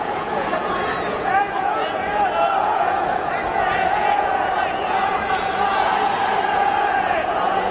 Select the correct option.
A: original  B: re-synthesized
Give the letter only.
B